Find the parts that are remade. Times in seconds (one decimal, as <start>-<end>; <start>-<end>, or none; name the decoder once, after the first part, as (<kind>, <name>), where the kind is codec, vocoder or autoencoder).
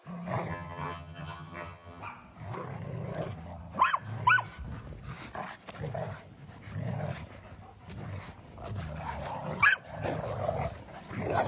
0.5-2.0 (vocoder, HiFi-GAN)